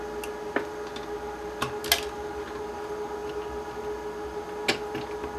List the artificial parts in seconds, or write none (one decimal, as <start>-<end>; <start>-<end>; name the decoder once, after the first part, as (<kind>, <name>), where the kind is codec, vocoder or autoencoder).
none